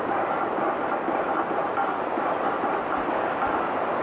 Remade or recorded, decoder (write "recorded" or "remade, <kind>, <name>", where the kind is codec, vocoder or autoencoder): recorded